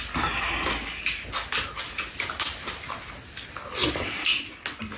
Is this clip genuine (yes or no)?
yes